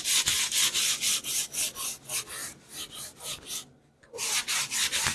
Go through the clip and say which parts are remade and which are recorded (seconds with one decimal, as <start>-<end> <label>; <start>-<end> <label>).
0.0-5.1 recorded